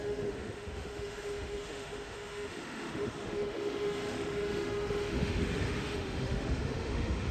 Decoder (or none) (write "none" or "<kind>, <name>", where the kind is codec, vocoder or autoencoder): autoencoder, DAC-VAE